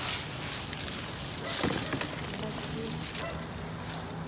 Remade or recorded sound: recorded